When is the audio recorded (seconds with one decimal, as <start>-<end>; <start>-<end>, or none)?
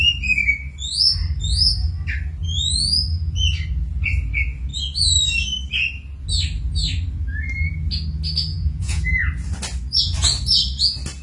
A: 0.0-8.5; 9.0-11.2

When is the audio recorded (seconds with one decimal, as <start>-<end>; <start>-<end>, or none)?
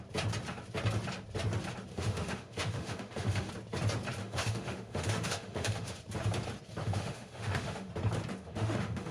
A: 0.0-1.9; 3.5-4.2; 6.0-6.8; 7.9-8.3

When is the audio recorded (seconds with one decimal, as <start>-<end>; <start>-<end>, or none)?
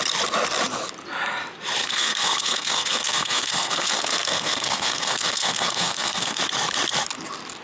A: 0.0-1.8; 6.4-7.6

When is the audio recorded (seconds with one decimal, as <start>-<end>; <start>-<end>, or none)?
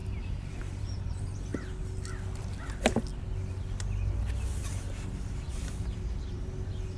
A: 1.5-5.5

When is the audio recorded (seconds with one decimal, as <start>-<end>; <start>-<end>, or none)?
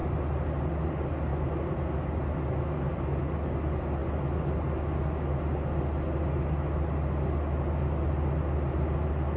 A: 0.0-9.4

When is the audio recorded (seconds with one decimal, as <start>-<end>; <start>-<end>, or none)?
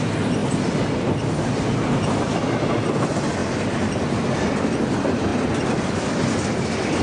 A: 0.0-5.3; 6.1-7.0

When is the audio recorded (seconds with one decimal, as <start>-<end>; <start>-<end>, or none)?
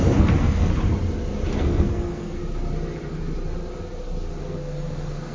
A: 0.7-1.5; 2.4-4.4